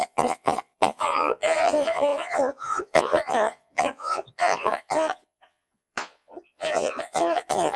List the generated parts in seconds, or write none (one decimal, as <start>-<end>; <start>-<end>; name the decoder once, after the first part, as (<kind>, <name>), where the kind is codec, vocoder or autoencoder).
0.0-7.8 (vocoder, Vocos)